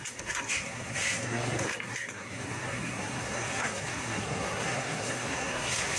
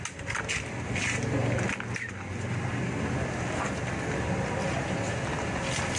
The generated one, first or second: first